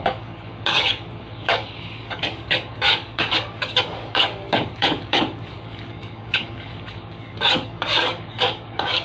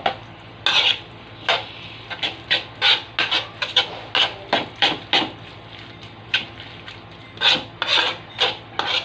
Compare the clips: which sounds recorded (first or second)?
second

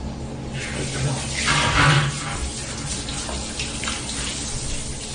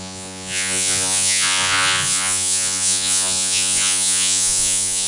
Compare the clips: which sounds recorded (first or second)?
first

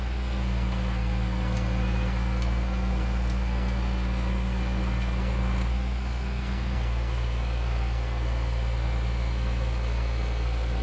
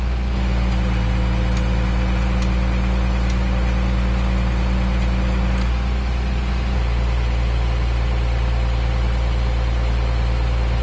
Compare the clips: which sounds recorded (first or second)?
second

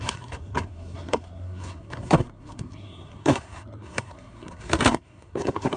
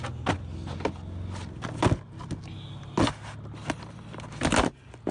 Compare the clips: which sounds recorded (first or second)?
second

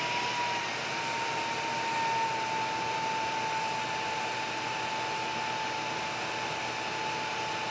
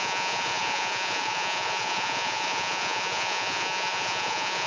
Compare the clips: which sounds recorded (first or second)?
first